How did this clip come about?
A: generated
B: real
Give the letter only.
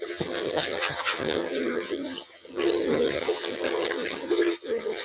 A